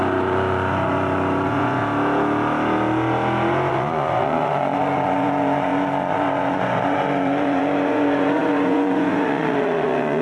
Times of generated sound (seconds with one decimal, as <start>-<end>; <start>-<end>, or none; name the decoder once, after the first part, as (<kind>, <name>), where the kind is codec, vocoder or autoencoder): 0.0-1.8 (vocoder, Vocos); 3.7-10.2